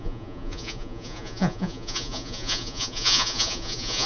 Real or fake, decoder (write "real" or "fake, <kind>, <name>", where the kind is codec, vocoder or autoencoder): fake, vocoder, Vocos